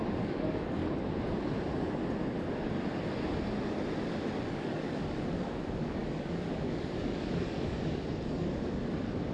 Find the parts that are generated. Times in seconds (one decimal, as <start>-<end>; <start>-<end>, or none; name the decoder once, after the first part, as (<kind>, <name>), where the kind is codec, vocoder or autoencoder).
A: 0.0-0.8 (codec, DAC); 4.5-9.3